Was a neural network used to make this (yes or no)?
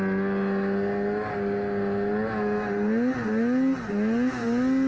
no